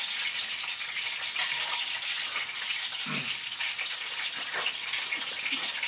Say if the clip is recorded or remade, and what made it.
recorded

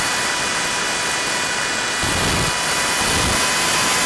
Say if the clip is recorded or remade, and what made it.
recorded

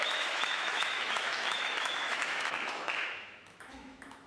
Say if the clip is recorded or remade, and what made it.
remade, autoencoder, DAC-VAE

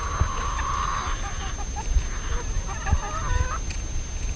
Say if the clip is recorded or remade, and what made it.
recorded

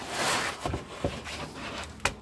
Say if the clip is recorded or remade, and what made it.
recorded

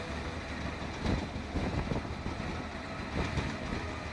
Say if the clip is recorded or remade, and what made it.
recorded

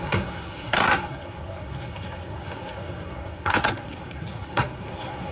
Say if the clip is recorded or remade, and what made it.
remade, codec, SNAC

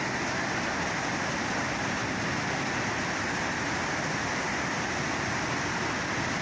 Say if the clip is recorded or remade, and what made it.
recorded